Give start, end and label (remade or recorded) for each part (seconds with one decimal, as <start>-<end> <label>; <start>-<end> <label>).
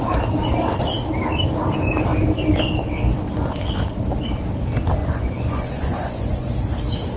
0.0-5.0 recorded; 5.0-6.5 remade; 6.5-7.2 recorded